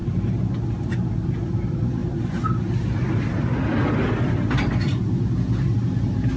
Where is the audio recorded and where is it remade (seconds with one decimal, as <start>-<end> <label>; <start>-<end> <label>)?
0.0-6.4 recorded